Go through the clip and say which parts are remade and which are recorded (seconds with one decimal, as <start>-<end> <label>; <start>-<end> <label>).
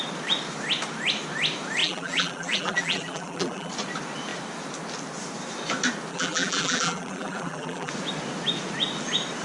0.0-1.8 recorded; 1.8-3.7 remade; 3.7-6.1 recorded; 6.1-7.9 remade; 7.9-9.4 recorded